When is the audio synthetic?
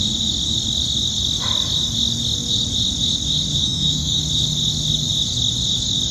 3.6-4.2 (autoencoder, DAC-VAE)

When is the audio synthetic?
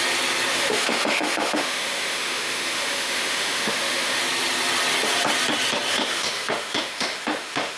0.5-4.2 (autoencoder, DAC-VAE); 5.9-7.8